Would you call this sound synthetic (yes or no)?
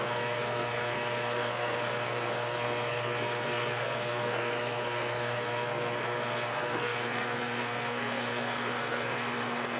yes